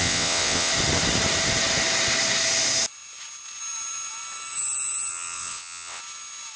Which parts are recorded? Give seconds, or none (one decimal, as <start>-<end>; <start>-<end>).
0.7-5.1; 6.0-6.6